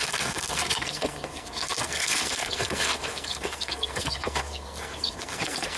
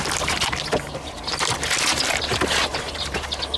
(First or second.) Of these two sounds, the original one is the second